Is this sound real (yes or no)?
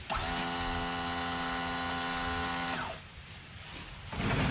yes